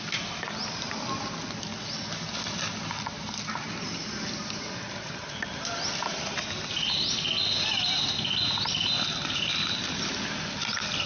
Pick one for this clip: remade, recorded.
recorded